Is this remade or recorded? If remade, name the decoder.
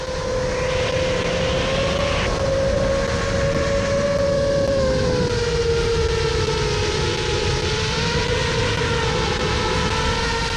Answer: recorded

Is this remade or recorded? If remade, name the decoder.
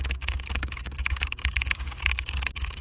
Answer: remade, codec, DAC